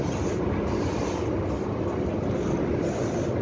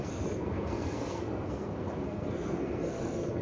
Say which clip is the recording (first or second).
first